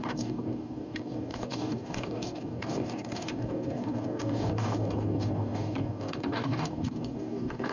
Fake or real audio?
fake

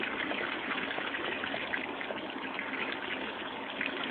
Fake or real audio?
fake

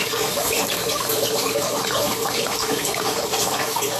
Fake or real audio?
fake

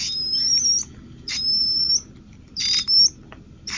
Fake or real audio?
real